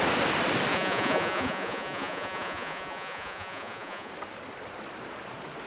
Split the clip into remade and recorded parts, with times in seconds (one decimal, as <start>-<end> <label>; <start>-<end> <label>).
0.0-0.7 recorded; 0.7-4.1 remade; 4.1-5.7 recorded